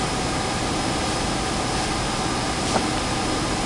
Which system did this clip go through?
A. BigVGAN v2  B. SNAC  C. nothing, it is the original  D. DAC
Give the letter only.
C